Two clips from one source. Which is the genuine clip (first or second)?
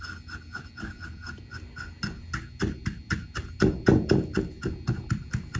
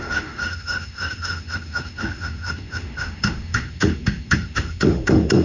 first